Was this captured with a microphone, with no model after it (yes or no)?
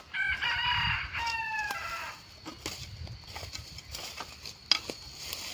yes